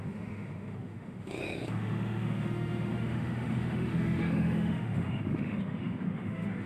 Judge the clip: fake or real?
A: fake